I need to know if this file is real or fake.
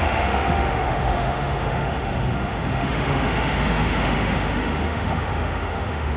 fake